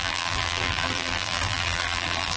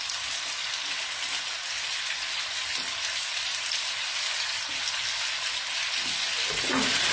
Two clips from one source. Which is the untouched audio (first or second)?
second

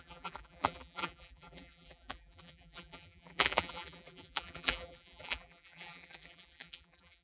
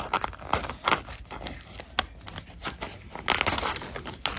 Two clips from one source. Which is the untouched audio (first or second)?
second